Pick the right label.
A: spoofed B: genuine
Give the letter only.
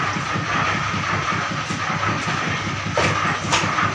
B